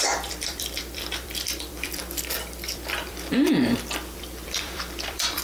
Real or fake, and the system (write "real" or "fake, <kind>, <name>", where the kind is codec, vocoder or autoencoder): fake, vocoder, BigVGAN v2